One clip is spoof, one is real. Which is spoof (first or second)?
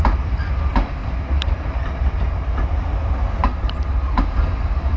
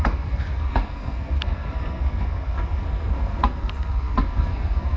second